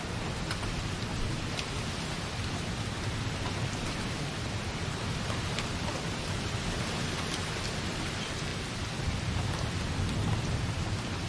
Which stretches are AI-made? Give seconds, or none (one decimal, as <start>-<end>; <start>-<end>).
none